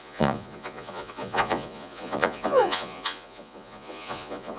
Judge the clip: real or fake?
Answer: fake